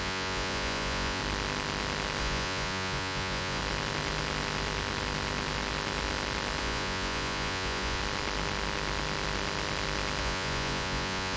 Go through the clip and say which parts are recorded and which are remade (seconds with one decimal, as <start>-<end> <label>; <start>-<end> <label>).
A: 0.0-1.2 remade; 1.2-2.2 recorded; 2.2-3.6 remade; 3.6-6.6 recorded; 6.6-8.0 remade; 8.0-10.2 recorded; 10.2-11.4 remade